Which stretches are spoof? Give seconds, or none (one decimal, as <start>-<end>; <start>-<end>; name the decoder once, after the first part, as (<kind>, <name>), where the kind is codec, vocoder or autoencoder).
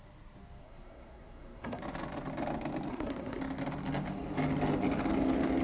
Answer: 0.6-1.8 (codec, SNAC); 2.9-3.4